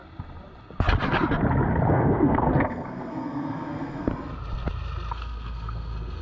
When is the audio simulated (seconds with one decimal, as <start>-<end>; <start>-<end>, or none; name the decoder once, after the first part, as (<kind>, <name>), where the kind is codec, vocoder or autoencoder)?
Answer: 1.9-4.1 (codec, SNAC); 5.1-6.2